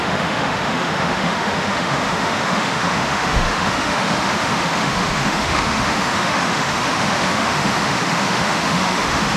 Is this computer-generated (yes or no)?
yes